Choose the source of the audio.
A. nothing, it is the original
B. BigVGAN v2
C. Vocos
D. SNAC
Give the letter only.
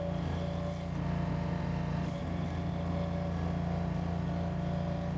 A